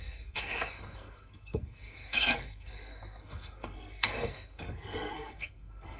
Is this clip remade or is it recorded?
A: remade